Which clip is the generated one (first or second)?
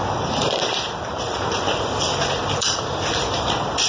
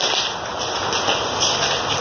first